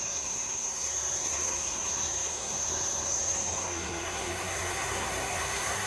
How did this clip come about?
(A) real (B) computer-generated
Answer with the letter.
B